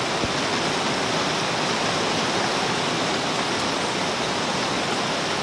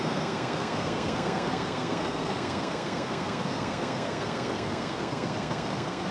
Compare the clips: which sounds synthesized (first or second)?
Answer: second